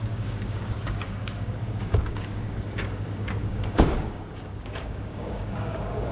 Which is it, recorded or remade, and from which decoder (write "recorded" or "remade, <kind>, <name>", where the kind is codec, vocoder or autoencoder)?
remade, codec, DAC